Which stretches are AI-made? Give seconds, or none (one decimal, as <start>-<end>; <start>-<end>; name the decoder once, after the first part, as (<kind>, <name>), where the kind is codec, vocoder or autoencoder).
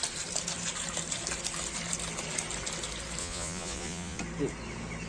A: 3.2-4.2 (vocoder, Vocos)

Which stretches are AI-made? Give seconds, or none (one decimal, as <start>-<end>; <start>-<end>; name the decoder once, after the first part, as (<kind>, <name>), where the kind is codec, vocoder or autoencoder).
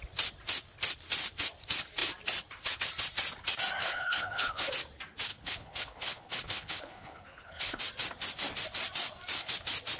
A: 3.8-4.7 (codec, HILCodec); 5.3-7.8